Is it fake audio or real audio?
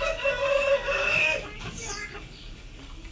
fake